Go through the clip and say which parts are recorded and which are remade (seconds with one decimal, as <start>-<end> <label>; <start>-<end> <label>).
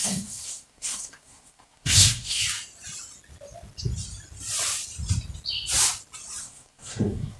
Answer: 0.0-2.4 remade; 2.4-6.4 recorded; 6.4-7.4 remade